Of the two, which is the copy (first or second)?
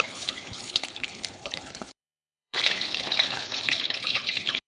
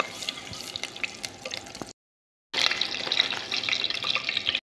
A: first